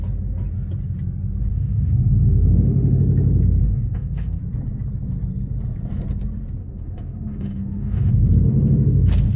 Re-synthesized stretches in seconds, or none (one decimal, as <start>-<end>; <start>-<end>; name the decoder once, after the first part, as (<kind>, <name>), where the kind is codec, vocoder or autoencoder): 1.5-3.0 (autoencoder, DAC-VAE); 3.6-4.4; 6.6-8.1